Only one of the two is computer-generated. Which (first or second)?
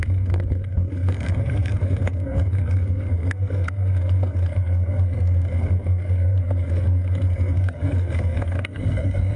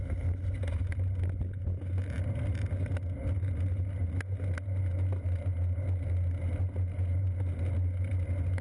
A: first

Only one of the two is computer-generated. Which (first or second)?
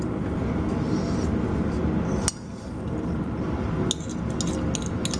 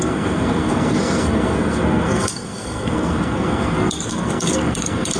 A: second